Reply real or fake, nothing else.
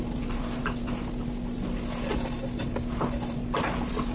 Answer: real